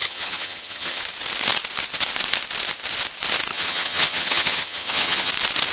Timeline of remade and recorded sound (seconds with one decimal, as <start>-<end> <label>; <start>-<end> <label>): 0.0-1.0 remade; 1.0-3.5 recorded; 3.5-5.3 remade; 5.3-5.7 recorded